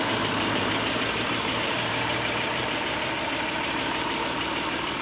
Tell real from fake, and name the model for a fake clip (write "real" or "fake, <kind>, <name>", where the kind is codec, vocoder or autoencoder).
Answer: fake, vocoder, BigVGAN v2